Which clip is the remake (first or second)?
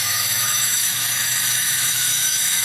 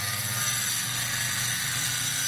first